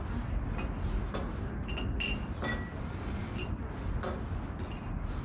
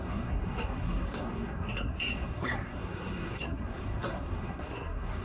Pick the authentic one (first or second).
first